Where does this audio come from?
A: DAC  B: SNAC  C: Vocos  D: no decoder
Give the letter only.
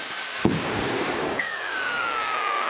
A